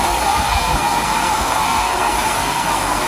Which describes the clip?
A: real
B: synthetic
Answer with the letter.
B